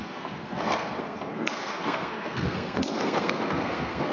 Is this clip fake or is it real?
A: fake